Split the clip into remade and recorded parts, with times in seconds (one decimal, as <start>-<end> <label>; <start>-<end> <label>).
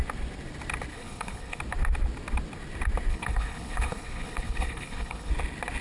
0.0-0.9 recorded; 0.9-1.6 remade; 1.6-3.1 recorded; 3.1-5.3 remade; 5.3-5.8 recorded